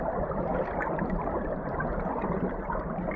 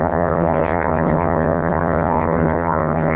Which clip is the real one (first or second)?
first